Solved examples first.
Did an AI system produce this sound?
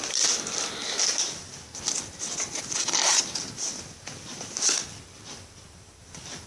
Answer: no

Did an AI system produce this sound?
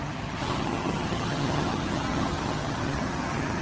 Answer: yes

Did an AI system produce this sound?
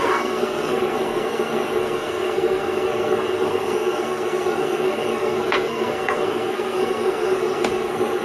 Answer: yes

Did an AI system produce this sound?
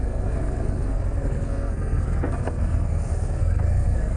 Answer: yes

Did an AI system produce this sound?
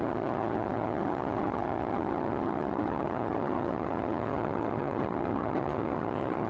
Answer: yes